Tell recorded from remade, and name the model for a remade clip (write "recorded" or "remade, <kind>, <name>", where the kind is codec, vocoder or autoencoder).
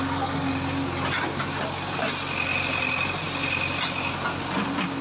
recorded